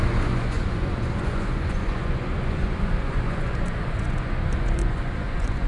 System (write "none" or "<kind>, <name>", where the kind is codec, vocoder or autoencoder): vocoder, Vocos